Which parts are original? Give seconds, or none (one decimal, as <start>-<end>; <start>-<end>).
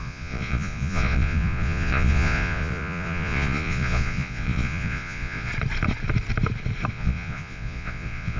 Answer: 5.5-6.9